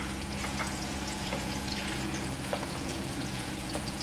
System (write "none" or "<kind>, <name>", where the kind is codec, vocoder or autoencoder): vocoder, Vocos